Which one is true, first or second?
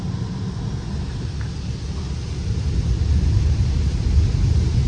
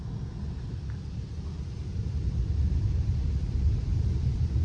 first